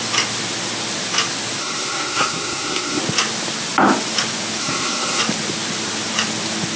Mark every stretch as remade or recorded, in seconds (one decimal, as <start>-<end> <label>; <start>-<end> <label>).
0.0-1.6 recorded; 1.6-3.0 remade; 3.0-4.6 recorded; 4.6-5.2 remade; 5.2-6.8 recorded